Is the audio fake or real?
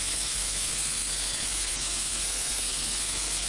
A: fake